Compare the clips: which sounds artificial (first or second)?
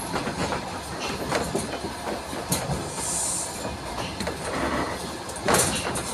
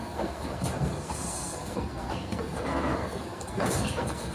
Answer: second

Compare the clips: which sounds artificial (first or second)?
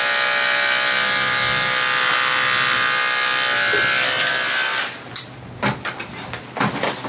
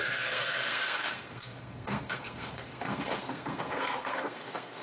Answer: second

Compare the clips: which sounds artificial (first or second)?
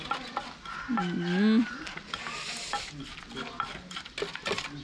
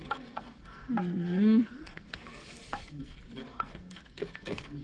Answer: second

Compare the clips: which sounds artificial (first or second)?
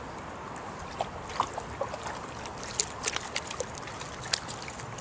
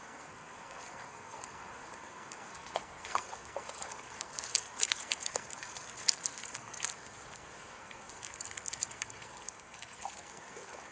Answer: second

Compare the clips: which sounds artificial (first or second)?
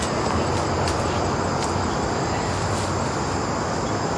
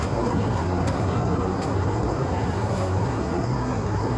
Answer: second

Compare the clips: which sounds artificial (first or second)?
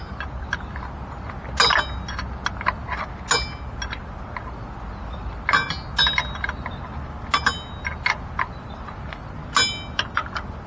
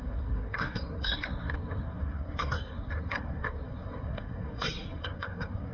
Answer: second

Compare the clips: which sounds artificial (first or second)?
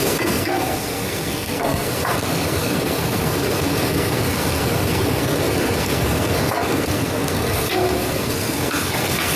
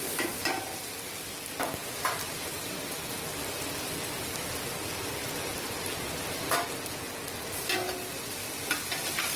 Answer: first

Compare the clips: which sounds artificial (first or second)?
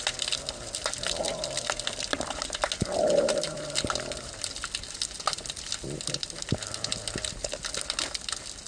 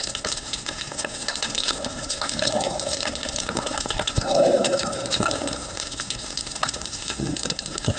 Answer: second